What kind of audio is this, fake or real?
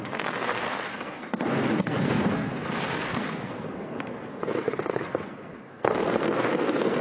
fake